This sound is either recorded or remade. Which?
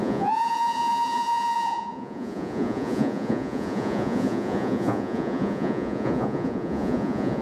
remade